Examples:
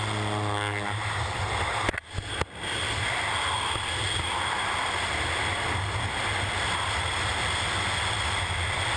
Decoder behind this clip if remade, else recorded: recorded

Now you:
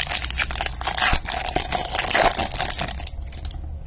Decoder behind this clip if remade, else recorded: recorded